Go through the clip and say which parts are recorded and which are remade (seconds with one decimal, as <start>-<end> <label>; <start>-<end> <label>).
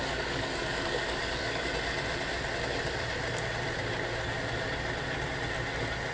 0.0-1.7 remade; 1.7-6.1 recorded